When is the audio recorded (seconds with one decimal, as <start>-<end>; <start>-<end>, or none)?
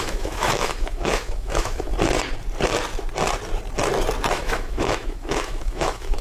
1.9-4.3